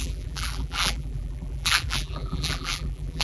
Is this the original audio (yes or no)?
no